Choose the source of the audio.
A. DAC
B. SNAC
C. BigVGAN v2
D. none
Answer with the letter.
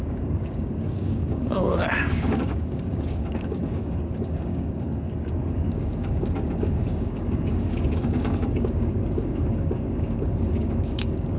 A